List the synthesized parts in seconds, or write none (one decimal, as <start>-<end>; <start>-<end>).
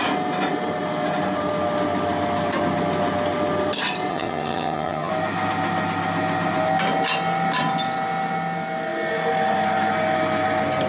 4.1-5.1